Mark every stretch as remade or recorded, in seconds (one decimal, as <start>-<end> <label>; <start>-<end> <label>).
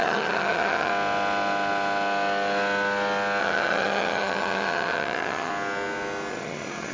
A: 0.0-0.9 remade; 0.9-3.4 recorded; 3.4-5.5 remade; 5.5-6.3 recorded; 6.3-6.9 remade